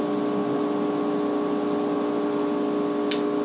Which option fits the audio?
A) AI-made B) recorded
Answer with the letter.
B